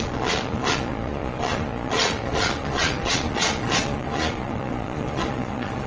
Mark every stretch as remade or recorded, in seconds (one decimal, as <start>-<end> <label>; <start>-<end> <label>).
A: 0.0-5.9 remade